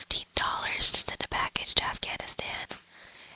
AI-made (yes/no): no